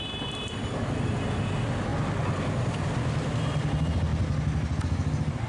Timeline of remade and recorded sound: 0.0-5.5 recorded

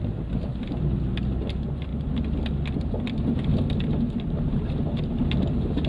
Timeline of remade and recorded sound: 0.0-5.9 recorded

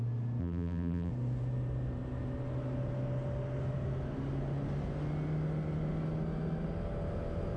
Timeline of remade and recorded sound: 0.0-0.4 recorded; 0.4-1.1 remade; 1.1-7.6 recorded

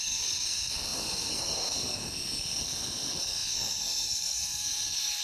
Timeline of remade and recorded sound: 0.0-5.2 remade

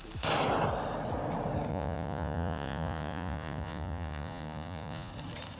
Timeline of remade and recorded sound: 0.0-1.7 recorded; 1.7-5.1 remade; 5.1-5.6 recorded

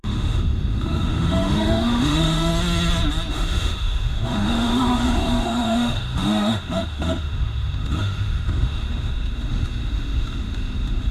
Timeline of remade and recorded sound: 0.0-2.5 remade; 2.5-3.3 recorded; 3.3-11.1 remade